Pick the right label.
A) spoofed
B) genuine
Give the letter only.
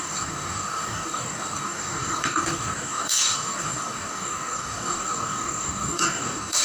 A